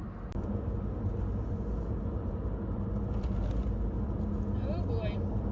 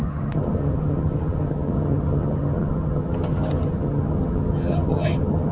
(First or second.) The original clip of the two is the first